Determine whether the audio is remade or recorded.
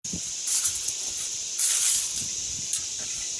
recorded